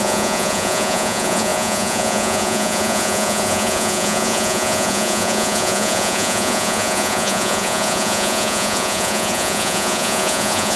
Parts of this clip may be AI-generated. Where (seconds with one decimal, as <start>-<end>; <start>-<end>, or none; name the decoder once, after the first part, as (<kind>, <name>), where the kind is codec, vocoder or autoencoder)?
0.0-10.8 (vocoder, Vocos)